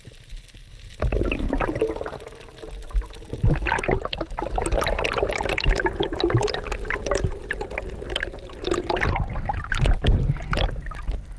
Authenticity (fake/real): real